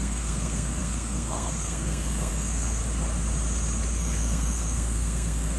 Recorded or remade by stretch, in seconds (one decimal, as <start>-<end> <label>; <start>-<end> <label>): 0.0-2.8 remade; 2.8-3.9 recorded; 3.9-5.6 remade